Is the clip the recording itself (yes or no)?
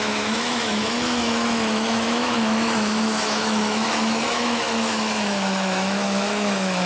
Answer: no